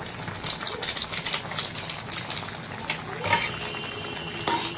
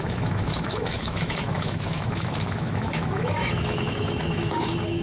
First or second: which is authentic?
first